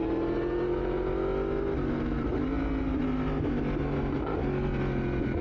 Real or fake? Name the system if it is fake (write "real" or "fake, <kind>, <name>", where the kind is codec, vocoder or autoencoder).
real